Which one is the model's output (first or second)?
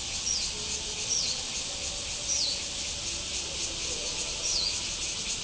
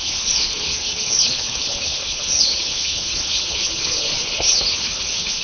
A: second